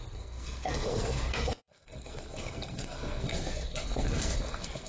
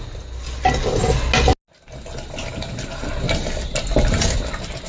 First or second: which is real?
second